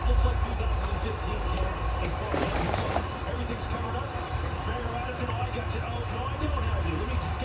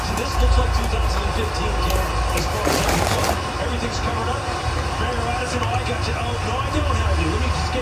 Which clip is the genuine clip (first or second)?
second